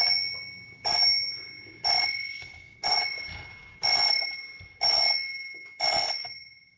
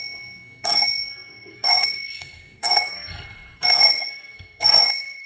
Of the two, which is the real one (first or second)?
first